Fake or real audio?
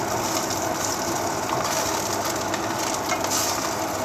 real